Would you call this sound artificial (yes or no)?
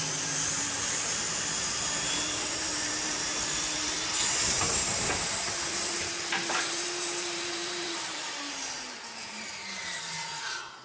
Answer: yes